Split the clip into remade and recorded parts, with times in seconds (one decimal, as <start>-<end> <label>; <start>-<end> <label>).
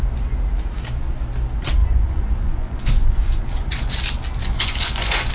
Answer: 0.0-1.8 recorded; 1.8-4.0 remade; 4.0-4.4 recorded; 4.4-5.3 remade